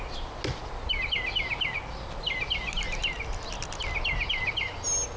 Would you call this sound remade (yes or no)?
no